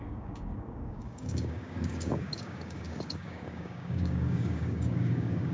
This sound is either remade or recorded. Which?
remade